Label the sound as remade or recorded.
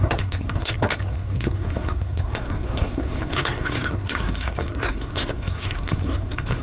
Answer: remade